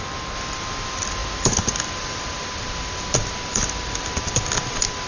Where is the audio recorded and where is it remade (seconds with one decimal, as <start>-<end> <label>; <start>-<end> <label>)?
0.0-5.1 recorded